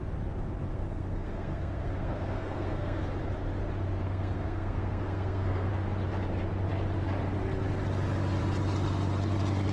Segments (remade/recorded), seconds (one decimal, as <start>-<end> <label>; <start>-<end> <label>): 0.0-0.7 recorded; 0.7-3.0 remade; 3.0-4.0 recorded; 4.0-5.7 remade; 5.7-9.7 recorded